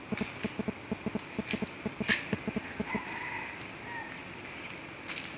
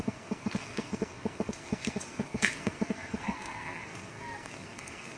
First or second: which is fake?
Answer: second